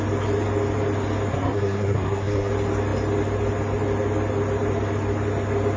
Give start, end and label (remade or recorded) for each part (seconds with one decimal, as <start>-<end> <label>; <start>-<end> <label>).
0.0-1.3 recorded; 1.3-2.5 remade; 2.5-5.8 recorded